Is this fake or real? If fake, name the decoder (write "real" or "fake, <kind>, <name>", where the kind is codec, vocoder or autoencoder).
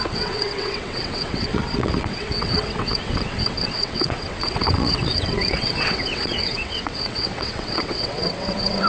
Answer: fake, vocoder, WaveNeXt